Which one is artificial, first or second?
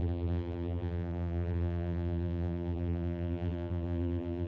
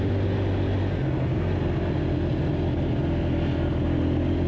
first